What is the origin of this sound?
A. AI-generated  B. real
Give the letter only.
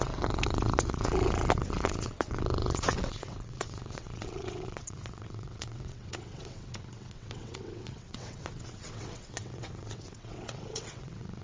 A